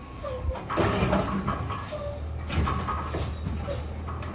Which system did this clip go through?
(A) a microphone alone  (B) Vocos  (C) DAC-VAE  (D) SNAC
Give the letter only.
A